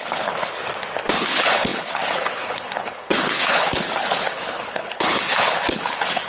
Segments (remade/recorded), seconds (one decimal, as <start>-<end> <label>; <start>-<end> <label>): 0.0-0.6 remade; 0.6-1.1 recorded; 1.1-6.3 remade